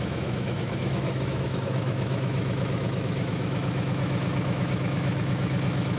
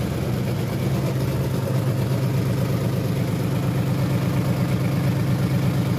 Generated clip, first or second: first